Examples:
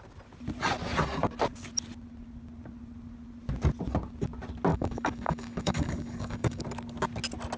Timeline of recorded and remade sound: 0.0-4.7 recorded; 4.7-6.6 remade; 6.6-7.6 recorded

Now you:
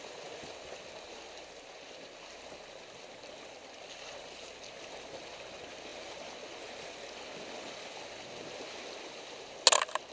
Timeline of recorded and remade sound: 0.0-10.1 recorded

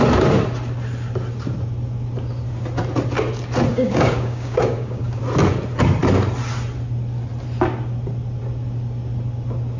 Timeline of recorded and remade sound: 0.0-3.7 recorded; 3.7-5.2 remade; 5.2-9.8 recorded

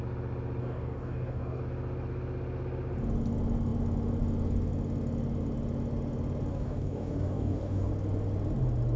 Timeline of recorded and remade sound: 0.0-0.6 recorded; 0.6-1.6 remade; 1.6-6.5 recorded; 6.5-7.9 remade; 7.9-9.0 recorded

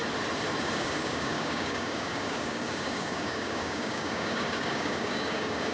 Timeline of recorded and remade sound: 0.0-0.6 recorded; 0.6-5.7 remade

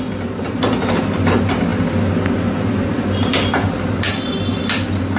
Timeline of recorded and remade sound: 0.0-5.2 recorded

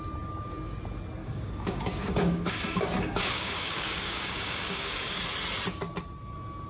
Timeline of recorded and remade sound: 0.0-1.2 recorded; 1.2-5.2 remade; 5.2-6.7 recorded

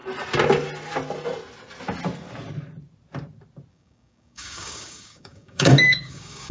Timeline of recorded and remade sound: 0.0-3.7 recorded; 3.7-6.5 remade